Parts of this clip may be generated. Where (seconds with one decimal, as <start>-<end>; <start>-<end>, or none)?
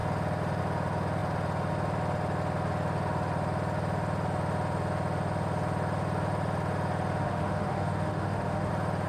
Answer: 7.2-8.7